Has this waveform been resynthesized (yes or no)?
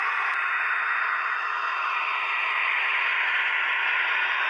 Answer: no